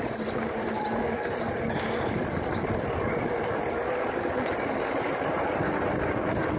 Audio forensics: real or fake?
fake